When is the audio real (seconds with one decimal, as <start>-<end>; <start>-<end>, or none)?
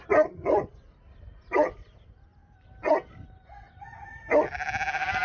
0.0-5.2